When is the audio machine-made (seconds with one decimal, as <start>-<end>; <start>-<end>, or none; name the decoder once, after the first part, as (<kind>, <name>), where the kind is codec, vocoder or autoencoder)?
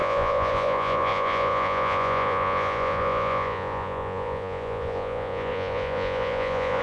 0.0-6.8 (vocoder, Vocos)